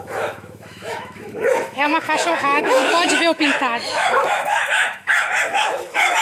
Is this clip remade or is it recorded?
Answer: remade